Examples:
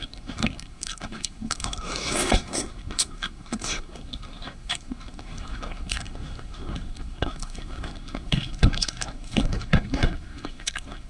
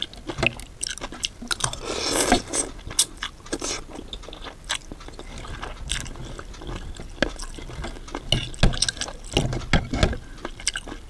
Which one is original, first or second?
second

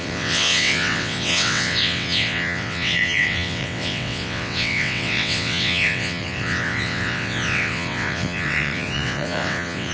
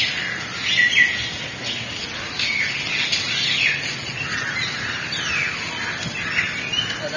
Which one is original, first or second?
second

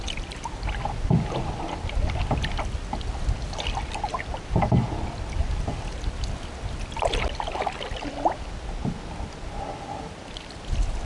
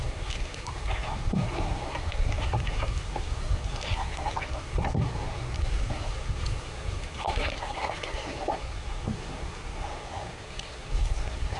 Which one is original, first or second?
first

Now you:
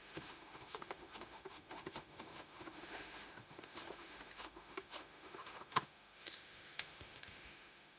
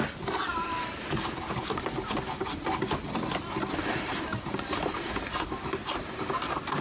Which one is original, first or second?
second